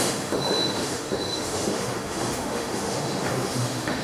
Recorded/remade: remade